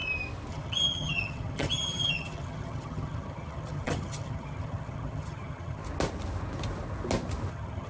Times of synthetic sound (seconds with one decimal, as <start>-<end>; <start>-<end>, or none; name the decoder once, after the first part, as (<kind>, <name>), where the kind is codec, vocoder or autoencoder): 0.5-5.8 (vocoder, HiFi-GAN); 7.5-7.9